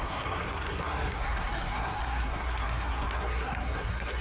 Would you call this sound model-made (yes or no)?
yes